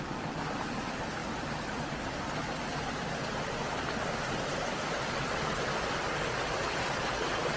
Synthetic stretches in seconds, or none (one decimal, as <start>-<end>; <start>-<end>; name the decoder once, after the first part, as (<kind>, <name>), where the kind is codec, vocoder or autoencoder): none